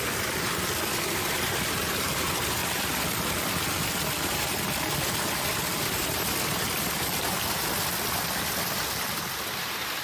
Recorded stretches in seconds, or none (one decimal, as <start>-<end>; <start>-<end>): 2.6-3.3